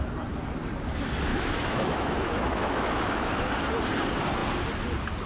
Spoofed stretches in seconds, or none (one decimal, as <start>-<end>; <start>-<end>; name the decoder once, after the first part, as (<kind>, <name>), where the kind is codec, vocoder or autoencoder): 1.3-3.5 (autoencoder, DAC-VAE)